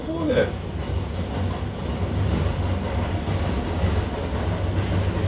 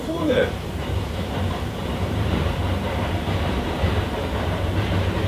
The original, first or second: first